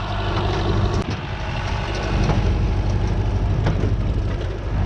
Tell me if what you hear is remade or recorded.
recorded